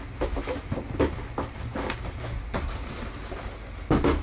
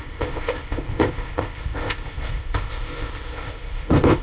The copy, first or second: second